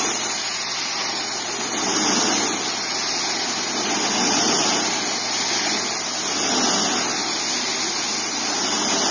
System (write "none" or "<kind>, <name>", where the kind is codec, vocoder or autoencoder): none